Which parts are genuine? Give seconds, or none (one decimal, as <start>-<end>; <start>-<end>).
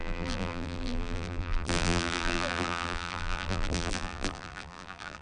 none